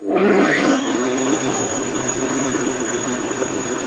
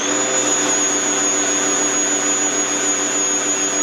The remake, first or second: first